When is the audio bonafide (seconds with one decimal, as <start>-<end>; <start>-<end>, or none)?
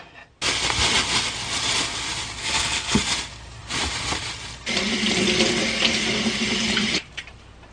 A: 0.0-2.4; 3.0-7.7